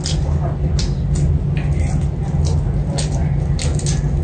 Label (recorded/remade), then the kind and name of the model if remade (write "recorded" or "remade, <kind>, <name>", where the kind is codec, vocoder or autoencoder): recorded